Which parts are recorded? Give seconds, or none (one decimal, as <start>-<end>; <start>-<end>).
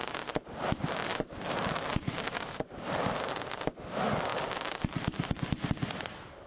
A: 0.0-1.1; 3.2-6.5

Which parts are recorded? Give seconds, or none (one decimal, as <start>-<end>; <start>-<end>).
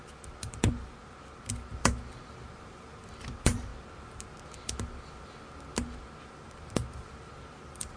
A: 0.0-1.7; 3.7-6.3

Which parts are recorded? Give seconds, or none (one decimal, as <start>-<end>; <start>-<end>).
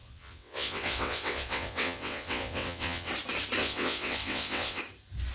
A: 3.1-3.6; 4.8-5.3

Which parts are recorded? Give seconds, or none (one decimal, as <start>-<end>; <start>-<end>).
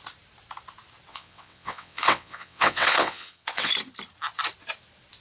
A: 0.0-1.1; 3.7-5.2